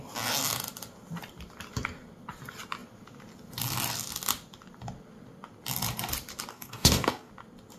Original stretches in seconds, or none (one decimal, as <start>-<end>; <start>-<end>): 0.0-6.5; 7.3-7.8

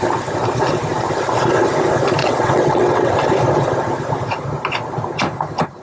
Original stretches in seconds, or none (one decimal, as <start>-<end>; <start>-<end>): 0.0-2.2; 3.1-5.8

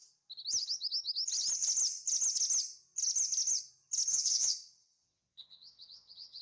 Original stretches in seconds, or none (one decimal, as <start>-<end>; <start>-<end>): 0.0-4.1

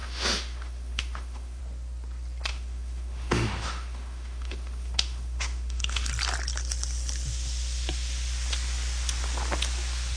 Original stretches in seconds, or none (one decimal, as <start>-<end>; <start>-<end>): 1.6-2.5; 6.1-10.2

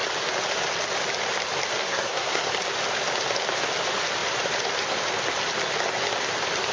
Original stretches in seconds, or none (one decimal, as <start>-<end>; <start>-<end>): 0.0-1.8; 2.5-6.7

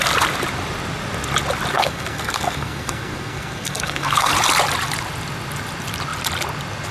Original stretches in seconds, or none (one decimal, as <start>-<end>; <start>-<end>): 0.0-1.7; 4.3-6.9

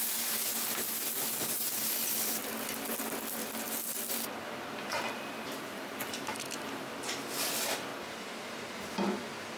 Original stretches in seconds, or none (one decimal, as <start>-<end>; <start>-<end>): 0.5-1.6; 2.4-4.1